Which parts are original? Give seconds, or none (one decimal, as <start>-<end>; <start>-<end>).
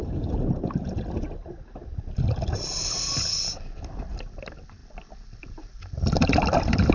0.0-6.9